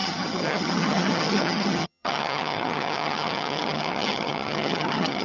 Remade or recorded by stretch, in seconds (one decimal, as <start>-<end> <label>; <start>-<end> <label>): 0.0-5.2 remade

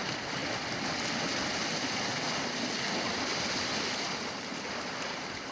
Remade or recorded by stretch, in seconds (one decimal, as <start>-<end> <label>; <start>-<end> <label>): 0.0-5.5 recorded

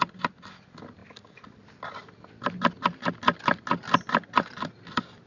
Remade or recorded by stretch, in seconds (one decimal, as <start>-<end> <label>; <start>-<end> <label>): 0.0-5.3 recorded

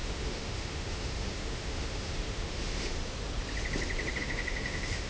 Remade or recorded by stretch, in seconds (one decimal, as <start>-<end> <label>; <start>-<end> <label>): 0.0-3.0 remade; 3.0-4.2 recorded; 4.2-5.1 remade

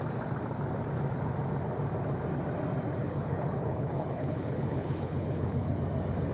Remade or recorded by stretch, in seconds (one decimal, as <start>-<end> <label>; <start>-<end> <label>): 0.0-3.0 recorded; 3.0-5.8 remade; 5.8-6.3 recorded

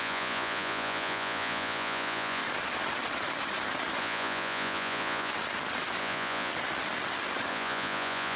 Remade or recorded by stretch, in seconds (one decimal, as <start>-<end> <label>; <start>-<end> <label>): 0.0-2.4 remade; 2.4-4.0 recorded; 4.0-5.3 remade; 5.3-6.0 recorded; 6.0-6.5 remade; 6.5-7.5 recorded; 7.5-8.4 remade

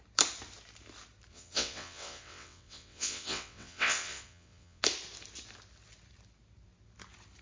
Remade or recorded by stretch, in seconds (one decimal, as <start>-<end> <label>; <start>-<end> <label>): 0.0-1.3 recorded; 1.3-4.8 remade; 4.8-7.4 recorded